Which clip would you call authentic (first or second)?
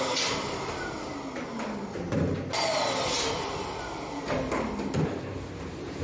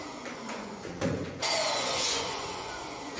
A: first